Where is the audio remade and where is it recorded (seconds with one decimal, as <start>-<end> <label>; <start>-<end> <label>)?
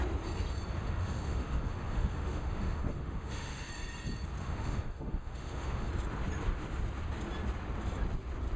0.0-0.8 recorded; 0.8-3.7 remade; 3.7-4.4 recorded; 4.4-5.9 remade; 5.9-8.6 recorded